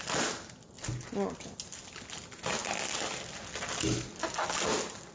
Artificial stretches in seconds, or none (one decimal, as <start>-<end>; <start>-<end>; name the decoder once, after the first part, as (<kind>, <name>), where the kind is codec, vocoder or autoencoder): none